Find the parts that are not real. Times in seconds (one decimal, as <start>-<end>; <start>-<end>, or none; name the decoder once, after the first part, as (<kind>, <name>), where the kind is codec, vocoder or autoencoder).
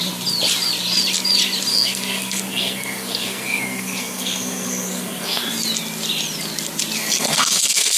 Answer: 1.7-5.4 (codec, SNAC); 7.0-8.0